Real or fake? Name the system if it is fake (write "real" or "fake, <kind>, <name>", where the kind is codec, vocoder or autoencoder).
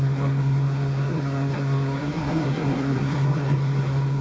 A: fake, codec, SNAC